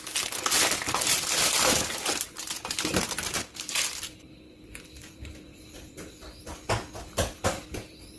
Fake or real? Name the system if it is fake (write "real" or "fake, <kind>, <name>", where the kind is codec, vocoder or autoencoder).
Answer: real